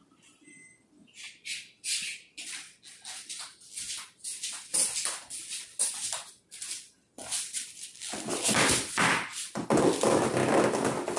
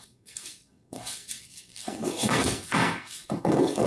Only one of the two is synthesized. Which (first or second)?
second